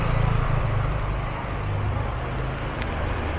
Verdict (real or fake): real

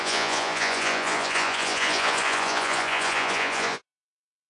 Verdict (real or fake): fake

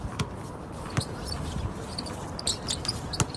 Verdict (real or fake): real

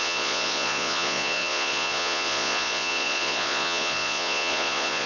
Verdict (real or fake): fake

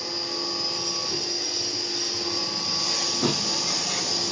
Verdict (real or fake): real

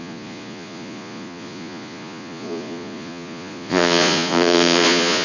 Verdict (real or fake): fake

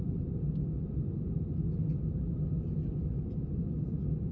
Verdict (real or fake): real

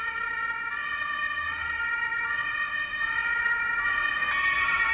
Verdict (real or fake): real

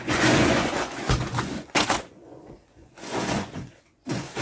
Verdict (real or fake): fake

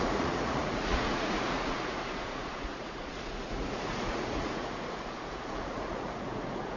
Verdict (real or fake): fake